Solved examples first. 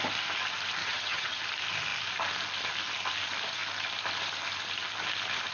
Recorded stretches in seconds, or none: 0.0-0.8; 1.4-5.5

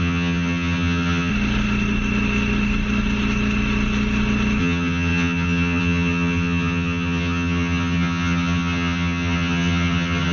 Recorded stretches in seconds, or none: 1.3-4.6

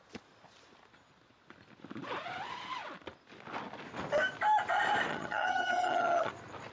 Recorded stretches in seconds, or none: 0.0-5.1; 6.3-6.7

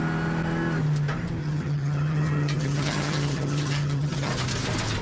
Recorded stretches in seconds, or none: 0.0-1.4; 4.3-5.0

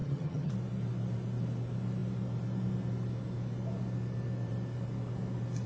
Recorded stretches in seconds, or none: 0.5-5.7

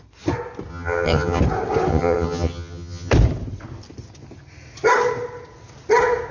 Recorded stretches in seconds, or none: 0.0-0.7; 1.4-1.9; 3.1-6.3

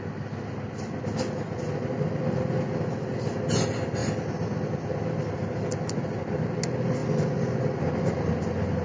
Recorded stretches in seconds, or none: 0.0-8.8

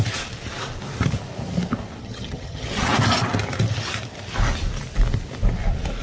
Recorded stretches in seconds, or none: 0.0-2.0; 2.9-6.0